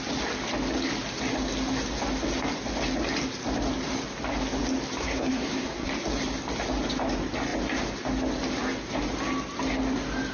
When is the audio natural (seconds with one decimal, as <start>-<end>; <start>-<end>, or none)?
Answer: 0.0-5.0; 5.9-10.3